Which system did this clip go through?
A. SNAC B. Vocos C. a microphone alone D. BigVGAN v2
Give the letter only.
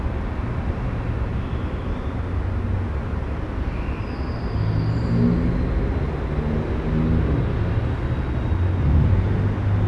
C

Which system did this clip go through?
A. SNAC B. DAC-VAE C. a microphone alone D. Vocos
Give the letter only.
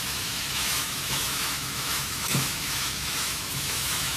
B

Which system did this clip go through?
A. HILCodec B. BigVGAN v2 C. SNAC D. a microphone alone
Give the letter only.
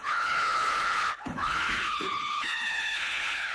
A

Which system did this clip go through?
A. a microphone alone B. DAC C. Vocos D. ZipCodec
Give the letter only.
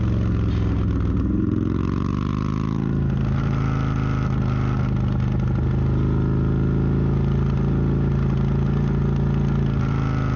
A